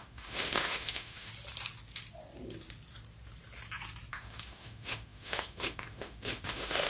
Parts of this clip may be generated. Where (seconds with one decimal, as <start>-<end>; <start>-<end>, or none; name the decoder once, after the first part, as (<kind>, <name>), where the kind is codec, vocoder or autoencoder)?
0.0-1.3 (autoencoder, DAC-VAE); 4.1-6.9